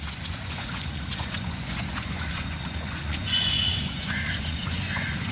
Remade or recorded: remade